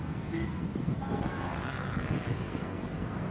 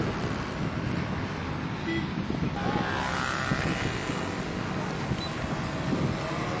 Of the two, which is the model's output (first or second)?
first